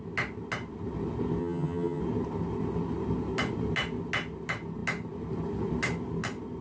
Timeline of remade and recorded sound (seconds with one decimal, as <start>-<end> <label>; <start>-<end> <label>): 0.0-1.4 recorded; 1.4-2.0 remade; 2.0-6.6 recorded